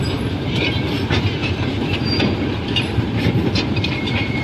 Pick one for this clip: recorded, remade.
remade